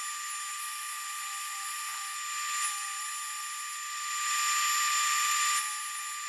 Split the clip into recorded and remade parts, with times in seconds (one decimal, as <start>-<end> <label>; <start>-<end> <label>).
0.0-6.3 recorded